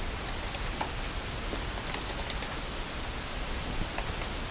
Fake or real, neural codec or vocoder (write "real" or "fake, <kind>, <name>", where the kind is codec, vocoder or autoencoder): real